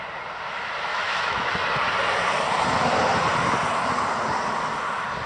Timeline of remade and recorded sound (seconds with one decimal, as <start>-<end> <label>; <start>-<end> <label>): 0.0-0.9 recorded; 0.9-1.5 remade; 1.5-5.3 recorded